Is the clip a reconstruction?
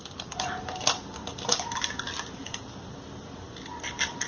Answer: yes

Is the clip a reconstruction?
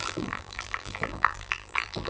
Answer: yes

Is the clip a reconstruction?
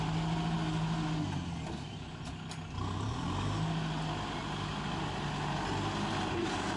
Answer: no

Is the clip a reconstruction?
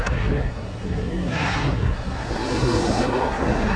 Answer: yes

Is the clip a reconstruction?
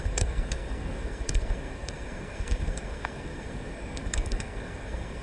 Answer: yes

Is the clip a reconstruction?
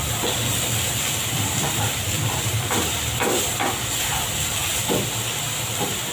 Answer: yes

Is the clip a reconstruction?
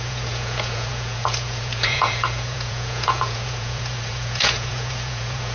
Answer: yes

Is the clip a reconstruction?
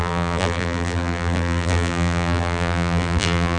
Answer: yes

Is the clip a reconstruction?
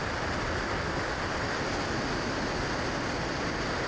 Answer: no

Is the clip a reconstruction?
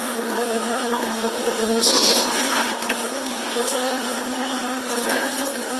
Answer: yes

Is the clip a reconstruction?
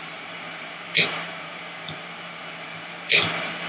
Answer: yes